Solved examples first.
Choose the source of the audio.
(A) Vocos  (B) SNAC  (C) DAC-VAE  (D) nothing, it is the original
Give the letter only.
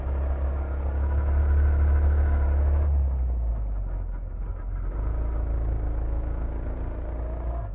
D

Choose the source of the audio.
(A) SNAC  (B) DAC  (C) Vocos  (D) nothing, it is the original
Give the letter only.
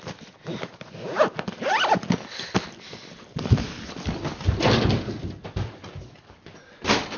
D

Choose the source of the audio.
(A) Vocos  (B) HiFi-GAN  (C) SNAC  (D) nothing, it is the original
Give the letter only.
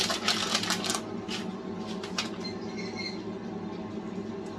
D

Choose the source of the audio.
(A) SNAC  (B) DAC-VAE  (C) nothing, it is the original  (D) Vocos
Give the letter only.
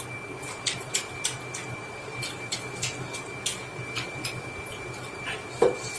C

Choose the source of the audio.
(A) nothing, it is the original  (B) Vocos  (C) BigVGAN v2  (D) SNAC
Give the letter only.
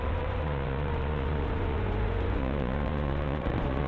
B